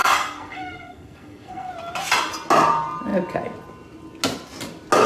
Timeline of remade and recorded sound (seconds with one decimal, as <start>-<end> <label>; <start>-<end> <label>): 0.0-1.7 remade; 1.7-5.1 recorded